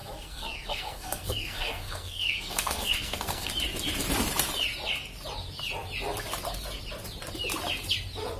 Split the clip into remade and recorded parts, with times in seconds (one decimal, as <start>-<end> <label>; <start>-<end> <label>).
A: 0.0-3.5 remade; 3.5-8.4 recorded